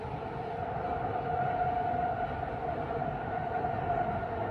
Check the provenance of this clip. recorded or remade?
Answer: recorded